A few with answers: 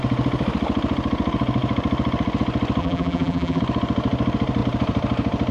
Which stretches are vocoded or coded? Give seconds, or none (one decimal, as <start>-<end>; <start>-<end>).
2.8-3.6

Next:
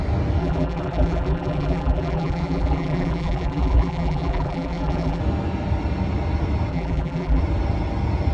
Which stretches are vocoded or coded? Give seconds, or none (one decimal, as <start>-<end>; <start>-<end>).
0.4-5.2; 6.7-7.4

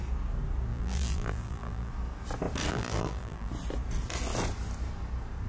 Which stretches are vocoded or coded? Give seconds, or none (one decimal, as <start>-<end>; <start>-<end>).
0.7-1.9; 2.7-3.5

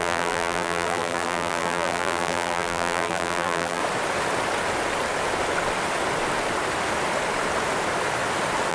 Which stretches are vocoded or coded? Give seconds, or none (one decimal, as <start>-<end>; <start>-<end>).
0.0-3.8

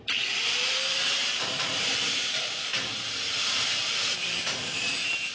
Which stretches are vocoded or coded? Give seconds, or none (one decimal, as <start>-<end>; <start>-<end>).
0.0-2.7; 3.4-5.3